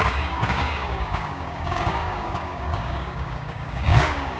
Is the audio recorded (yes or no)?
no